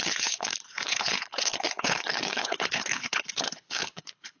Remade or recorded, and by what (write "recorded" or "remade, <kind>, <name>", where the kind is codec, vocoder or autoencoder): remade, codec, HILCodec